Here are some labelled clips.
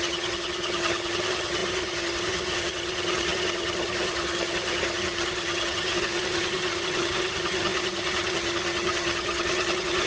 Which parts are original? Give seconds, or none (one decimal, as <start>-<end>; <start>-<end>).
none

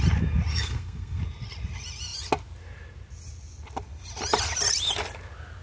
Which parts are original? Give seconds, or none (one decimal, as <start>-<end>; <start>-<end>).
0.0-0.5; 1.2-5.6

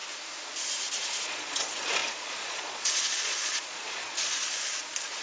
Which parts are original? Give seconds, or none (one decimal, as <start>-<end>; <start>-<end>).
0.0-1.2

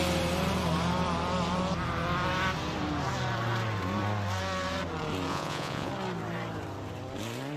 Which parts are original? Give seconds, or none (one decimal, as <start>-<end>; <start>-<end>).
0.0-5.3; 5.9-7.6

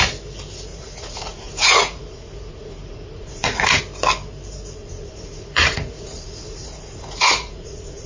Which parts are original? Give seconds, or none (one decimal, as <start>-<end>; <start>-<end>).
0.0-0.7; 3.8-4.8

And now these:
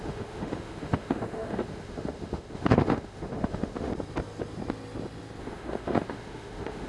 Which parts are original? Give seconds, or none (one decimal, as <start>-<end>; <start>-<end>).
3.9-5.4